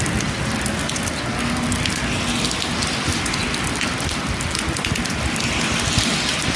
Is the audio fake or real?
real